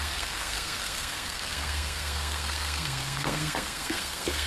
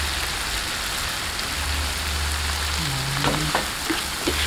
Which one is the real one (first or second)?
second